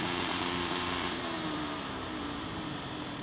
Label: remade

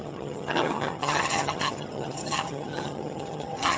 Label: remade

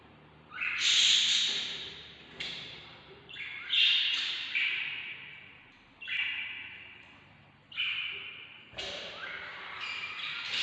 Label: remade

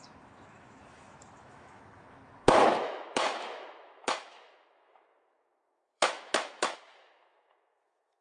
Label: remade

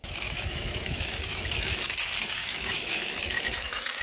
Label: remade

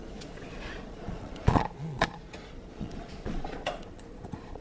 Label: remade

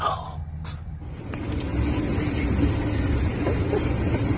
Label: recorded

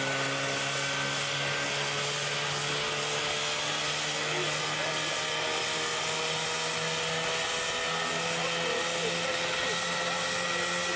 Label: recorded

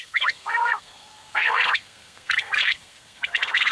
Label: remade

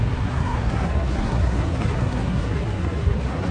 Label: remade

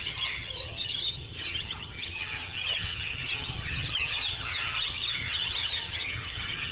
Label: remade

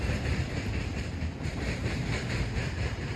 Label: remade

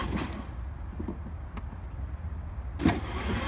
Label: recorded